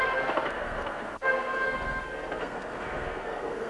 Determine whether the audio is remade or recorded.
remade